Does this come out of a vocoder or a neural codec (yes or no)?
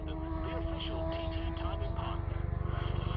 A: no